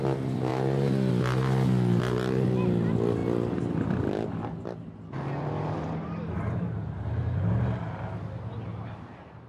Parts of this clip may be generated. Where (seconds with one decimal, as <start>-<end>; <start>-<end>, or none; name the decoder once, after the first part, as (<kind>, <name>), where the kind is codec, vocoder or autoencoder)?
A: none